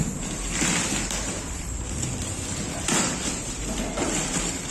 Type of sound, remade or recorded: remade